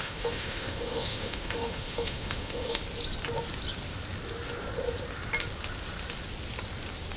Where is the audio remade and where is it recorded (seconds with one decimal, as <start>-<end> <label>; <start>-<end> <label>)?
0.0-2.8 remade; 2.8-7.2 recorded